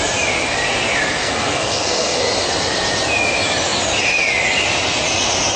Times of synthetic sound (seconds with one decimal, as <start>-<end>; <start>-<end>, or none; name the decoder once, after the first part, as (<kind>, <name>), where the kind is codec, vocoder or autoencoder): 1.2-2.2 (codec, SNAC)